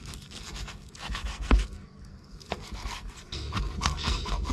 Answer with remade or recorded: remade